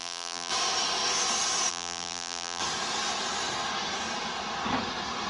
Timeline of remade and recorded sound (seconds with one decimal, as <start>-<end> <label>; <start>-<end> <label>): 0.0-0.5 remade; 0.5-1.7 recorded; 1.7-2.6 remade; 2.6-5.3 recorded